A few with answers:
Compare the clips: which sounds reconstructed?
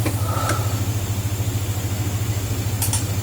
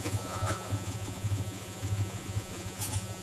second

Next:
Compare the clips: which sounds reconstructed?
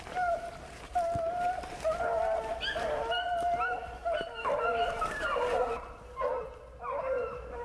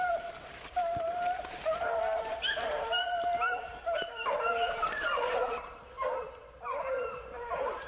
second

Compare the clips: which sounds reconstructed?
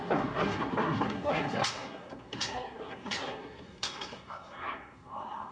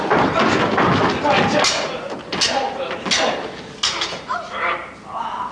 first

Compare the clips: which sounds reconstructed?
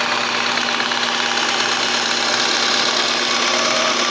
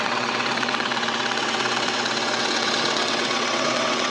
second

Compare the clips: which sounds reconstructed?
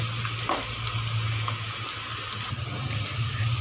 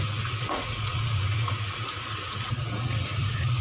second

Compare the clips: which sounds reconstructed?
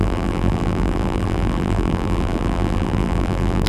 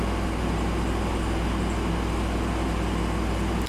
first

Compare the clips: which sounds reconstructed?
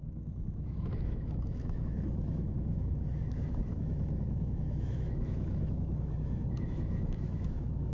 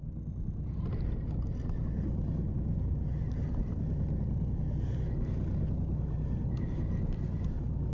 first